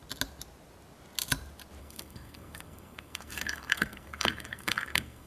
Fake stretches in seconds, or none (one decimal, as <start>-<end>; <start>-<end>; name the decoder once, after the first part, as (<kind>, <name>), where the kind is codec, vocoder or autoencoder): 1.8-5.3 (codec, SNAC)